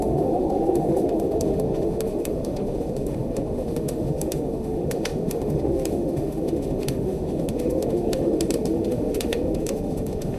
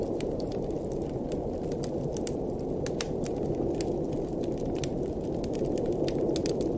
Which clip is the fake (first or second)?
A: first